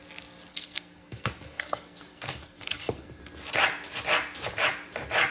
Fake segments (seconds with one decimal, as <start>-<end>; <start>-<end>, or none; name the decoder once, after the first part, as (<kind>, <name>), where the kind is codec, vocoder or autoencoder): 0.5-3.2 (codec, SNAC)